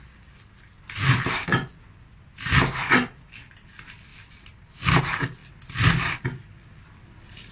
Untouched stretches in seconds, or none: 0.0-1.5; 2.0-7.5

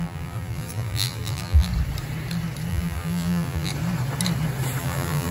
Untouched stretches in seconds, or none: 1.7-2.7; 3.7-4.8

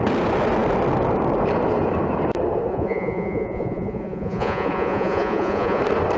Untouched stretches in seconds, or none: 0.0-2.7; 5.8-6.2

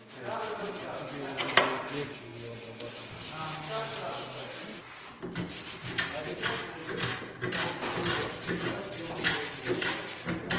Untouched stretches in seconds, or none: 0.0-10.6

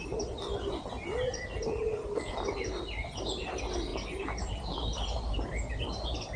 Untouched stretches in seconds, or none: 0.0-3.9; 5.4-6.4